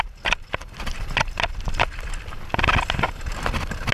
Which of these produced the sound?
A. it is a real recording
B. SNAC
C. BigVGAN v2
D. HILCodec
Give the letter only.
A